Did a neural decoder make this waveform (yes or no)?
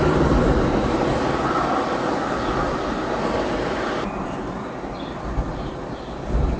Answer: no